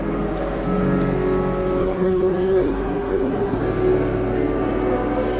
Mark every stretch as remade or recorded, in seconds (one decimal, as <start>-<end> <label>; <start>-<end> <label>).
0.0-1.8 recorded; 1.8-3.6 remade; 3.6-5.4 recorded